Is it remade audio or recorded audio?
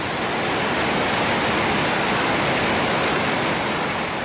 recorded